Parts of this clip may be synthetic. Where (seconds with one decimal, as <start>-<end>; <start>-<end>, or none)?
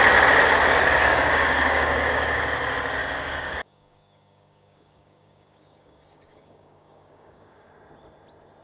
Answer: 1.0-2.4; 3.0-7.7